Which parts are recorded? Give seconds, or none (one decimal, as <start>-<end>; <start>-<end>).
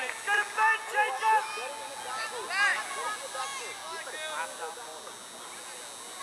0.0-6.2